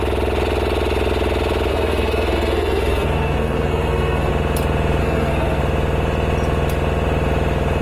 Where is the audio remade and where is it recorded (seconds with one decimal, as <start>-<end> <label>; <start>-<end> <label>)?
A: 0.0-1.7 recorded; 1.7-4.3 remade; 4.3-5.0 recorded; 5.0-5.6 remade; 5.6-7.8 recorded